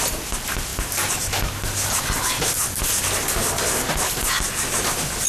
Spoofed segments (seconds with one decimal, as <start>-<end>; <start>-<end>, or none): none